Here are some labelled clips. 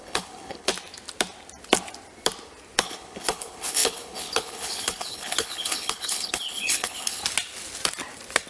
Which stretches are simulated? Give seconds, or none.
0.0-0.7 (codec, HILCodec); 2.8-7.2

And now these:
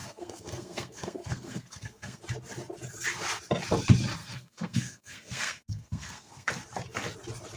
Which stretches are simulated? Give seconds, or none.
0.0-2.2 (codec, SNAC); 4.2-6.5

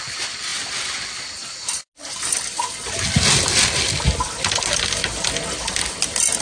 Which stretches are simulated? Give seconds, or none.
none

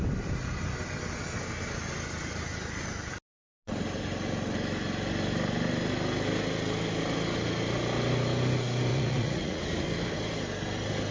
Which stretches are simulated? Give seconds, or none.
8.9-9.6 (vocoder, Vocos)

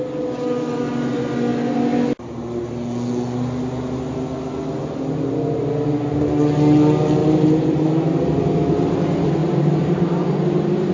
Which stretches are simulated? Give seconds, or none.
7.2-8.5 (vocoder, BigVGAN v2); 9.4-10.9

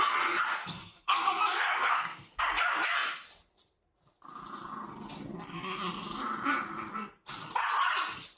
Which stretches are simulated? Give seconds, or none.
0.6-2.4 (codec, SNAC)

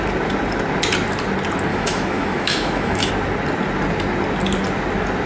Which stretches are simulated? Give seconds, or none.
1.7-3.1 (autoencoder, DAC-VAE)